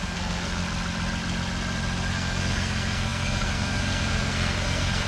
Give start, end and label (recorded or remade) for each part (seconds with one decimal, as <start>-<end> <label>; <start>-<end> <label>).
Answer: 0.0-0.6 remade; 0.6-2.1 recorded; 2.1-5.1 remade